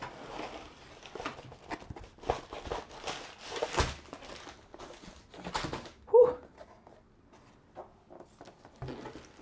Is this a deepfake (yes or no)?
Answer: no